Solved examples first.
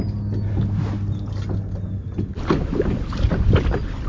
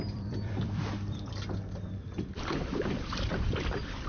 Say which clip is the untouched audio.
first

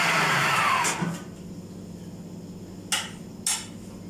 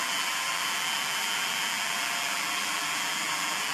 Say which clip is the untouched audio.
first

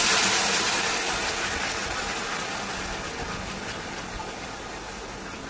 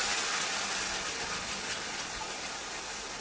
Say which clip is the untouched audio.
first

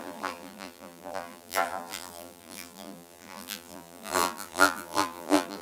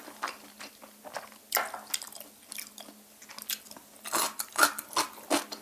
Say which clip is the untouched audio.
second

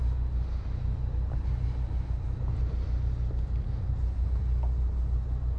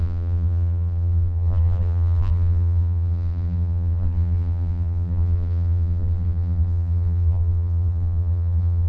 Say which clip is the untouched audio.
first